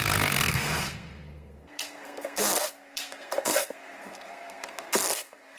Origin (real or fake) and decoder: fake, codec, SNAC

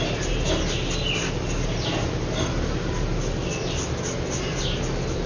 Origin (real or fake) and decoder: real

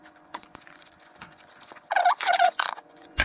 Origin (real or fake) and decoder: fake, vocoder, Vocos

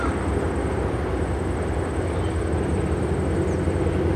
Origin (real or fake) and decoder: real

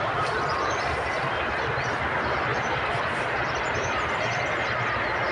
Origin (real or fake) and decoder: real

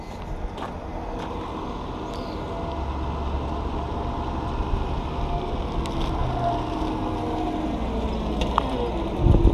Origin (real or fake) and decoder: real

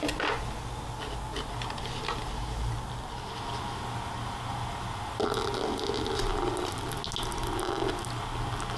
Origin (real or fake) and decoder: real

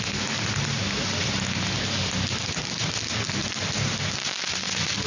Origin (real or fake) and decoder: real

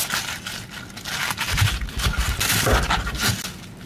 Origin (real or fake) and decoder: real